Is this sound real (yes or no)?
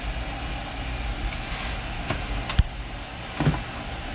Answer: yes